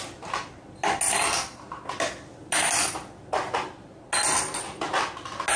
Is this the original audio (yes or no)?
yes